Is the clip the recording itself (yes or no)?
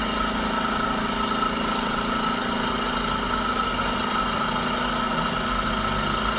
yes